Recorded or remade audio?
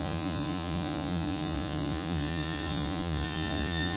remade